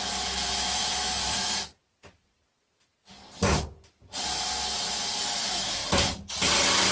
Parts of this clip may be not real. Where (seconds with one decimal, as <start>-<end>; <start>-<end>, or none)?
0.0-1.7; 5.2-5.8